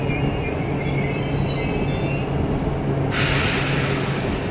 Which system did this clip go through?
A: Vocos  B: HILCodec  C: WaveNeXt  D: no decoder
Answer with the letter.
D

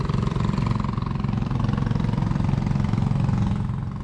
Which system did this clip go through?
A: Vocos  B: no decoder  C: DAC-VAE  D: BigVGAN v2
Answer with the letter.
B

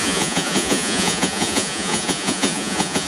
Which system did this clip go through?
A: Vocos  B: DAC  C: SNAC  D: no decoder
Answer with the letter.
A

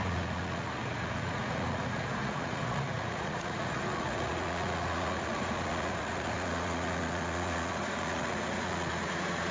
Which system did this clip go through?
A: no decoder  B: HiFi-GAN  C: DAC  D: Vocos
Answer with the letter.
D